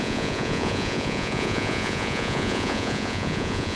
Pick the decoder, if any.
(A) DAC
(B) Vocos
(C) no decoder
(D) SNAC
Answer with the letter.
B